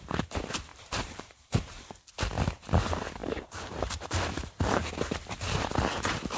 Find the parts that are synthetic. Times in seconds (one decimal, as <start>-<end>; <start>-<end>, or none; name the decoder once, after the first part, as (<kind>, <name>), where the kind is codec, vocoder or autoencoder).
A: 0.7-1.8 (vocoder, BigVGAN v2); 3.2-3.8